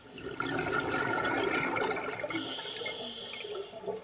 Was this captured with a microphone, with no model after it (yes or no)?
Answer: yes